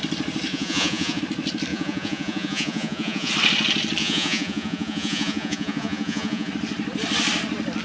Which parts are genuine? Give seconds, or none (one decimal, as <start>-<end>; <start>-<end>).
0.0-0.5; 1.2-1.7; 3.3-4.0; 6.5-7.8